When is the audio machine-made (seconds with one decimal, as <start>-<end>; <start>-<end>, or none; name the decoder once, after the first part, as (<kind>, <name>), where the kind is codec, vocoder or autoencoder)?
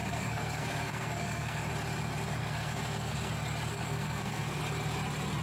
0.0-1.6 (codec, SNAC); 2.4-3.3; 3.7-4.6